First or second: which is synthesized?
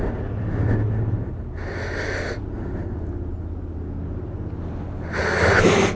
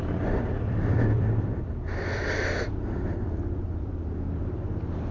second